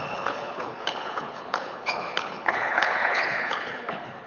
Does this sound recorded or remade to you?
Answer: remade